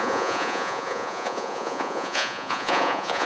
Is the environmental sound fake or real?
fake